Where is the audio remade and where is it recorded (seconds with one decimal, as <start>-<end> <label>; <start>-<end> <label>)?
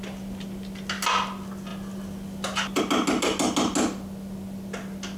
0.0-5.2 recorded